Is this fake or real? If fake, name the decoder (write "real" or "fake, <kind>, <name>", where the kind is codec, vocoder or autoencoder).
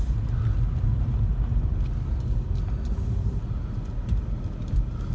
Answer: real